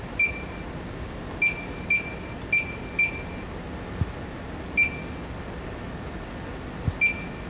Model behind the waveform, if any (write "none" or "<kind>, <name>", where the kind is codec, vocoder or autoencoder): none